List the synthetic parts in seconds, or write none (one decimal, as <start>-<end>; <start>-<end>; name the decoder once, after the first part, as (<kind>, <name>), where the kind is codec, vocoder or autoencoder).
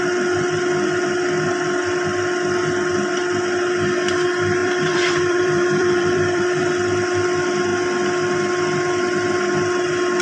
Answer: 4.6-6.6 (vocoder, BigVGAN v2)